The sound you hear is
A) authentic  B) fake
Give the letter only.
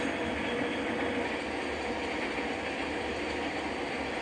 A